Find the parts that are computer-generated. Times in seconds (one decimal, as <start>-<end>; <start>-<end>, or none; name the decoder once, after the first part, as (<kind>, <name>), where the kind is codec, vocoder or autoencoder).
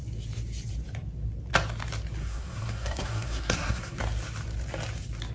2.2-4.0 (codec, SNAC)